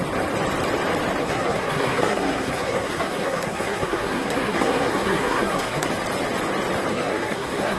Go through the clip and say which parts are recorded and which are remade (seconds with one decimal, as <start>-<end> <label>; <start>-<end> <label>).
0.0-1.2 recorded; 1.2-5.9 remade; 5.9-6.9 recorded; 6.9-7.8 remade